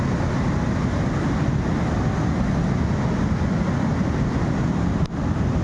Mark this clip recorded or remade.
recorded